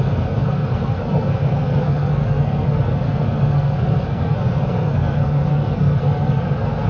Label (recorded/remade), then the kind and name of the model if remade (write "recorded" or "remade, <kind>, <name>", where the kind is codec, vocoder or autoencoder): remade, codec, SNAC